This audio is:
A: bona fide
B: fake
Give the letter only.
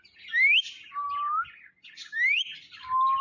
A